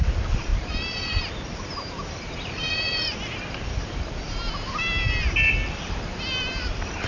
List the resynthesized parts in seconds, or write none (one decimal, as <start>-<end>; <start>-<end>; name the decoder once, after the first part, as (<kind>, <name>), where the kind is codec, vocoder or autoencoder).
0.5-4.5 (vocoder, BigVGAN v2)